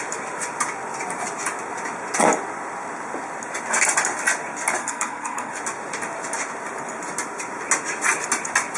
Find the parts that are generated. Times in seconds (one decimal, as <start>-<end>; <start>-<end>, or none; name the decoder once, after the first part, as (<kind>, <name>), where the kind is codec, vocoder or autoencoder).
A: 4.8-5.5 (codec, SNAC)